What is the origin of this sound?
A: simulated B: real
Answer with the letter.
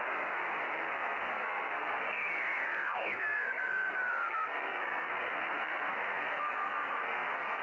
A